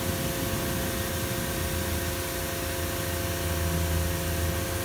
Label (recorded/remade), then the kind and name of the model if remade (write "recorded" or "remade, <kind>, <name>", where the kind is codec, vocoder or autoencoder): recorded